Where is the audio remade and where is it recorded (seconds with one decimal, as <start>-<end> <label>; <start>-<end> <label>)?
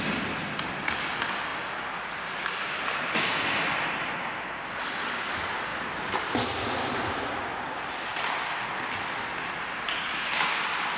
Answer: 0.0-11.0 recorded